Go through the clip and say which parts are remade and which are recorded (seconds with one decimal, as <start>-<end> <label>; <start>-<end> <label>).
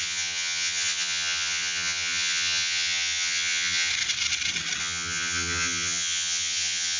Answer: 0.0-3.9 remade; 3.9-4.8 recorded; 4.8-7.0 remade